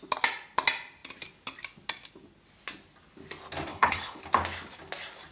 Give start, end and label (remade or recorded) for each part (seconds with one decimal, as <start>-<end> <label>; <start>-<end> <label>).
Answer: 0.0-3.7 recorded; 3.7-4.2 remade; 4.2-5.3 recorded